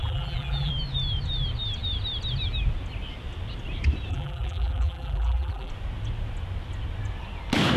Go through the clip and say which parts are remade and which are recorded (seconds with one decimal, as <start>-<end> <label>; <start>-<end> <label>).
0.0-0.7 remade; 0.7-4.1 recorded; 4.1-5.7 remade; 5.7-7.8 recorded